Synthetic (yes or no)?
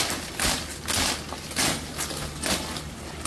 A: no